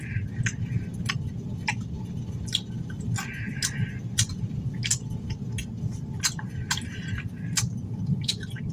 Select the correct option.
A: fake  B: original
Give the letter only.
B